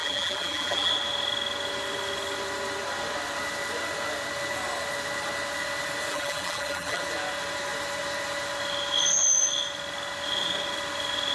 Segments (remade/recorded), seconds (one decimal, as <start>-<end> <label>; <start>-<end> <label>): 0.0-0.9 remade; 0.9-6.1 recorded; 6.1-7.0 remade; 7.0-11.3 recorded

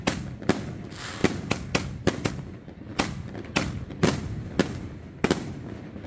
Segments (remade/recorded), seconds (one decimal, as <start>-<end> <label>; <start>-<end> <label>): 0.0-2.9 recorded; 2.9-4.2 remade; 4.2-6.1 recorded

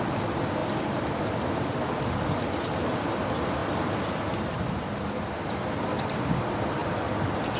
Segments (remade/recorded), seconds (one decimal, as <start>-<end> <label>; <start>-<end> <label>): 0.0-7.6 recorded